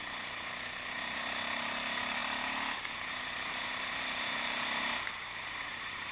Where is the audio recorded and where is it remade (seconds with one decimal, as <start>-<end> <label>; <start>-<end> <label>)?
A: 0.0-6.1 remade